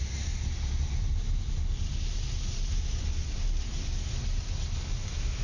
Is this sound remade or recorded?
recorded